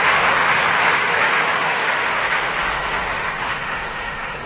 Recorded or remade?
remade